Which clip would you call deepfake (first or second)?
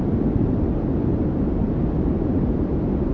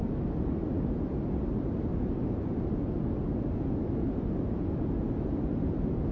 first